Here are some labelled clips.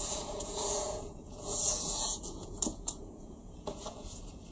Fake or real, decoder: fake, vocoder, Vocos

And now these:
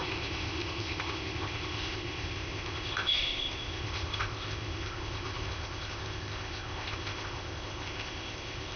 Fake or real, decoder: fake, codec, ZipCodec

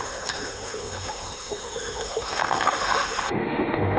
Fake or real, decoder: fake, autoencoder, DAC-VAE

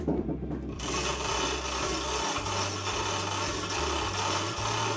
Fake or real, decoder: real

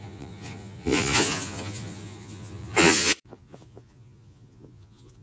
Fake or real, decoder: fake, vocoder, Vocos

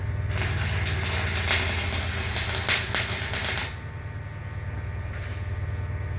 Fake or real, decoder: real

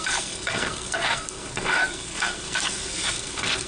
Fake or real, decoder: fake, codec, SNAC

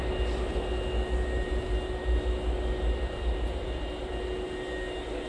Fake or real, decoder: real